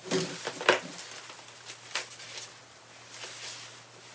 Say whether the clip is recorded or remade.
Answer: recorded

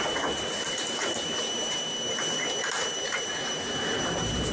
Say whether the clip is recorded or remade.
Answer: remade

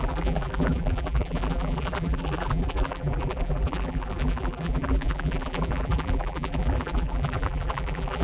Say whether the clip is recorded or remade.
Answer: remade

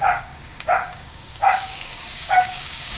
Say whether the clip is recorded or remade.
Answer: remade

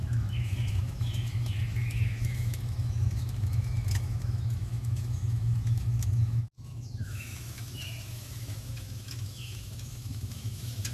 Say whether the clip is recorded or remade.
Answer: remade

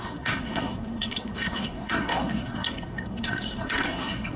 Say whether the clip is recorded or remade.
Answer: remade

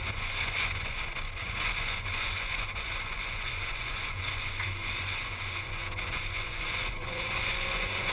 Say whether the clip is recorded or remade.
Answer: remade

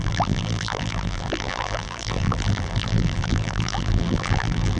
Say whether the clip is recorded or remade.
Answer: remade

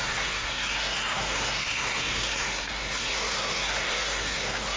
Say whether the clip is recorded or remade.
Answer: remade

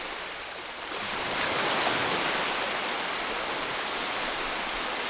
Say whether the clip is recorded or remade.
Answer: recorded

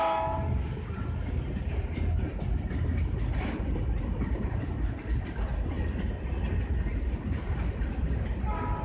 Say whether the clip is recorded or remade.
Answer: recorded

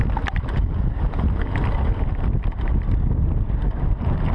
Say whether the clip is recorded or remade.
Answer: recorded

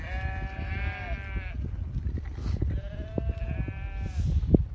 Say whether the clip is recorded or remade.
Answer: recorded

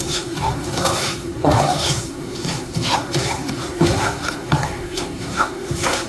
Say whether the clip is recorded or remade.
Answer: remade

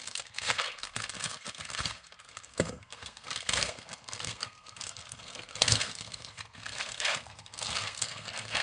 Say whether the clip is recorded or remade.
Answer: remade